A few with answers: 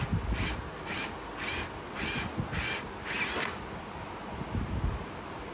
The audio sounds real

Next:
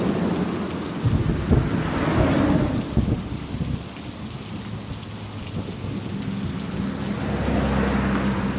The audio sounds real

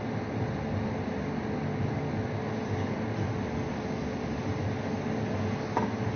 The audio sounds real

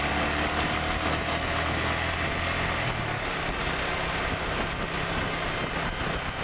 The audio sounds real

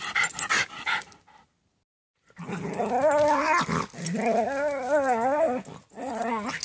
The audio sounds real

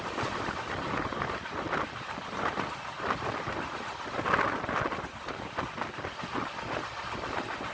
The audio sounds real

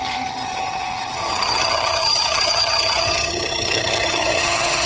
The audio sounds fake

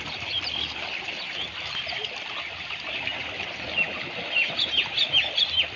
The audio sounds real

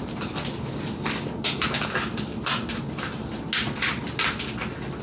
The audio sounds real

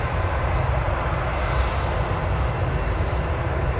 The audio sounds real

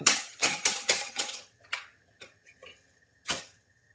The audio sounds fake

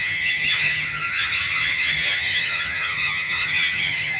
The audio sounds fake